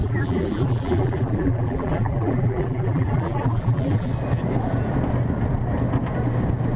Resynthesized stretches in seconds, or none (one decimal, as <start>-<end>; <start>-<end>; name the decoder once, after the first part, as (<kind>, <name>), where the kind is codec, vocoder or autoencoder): 0.0-4.1 (vocoder, BigVGAN v2)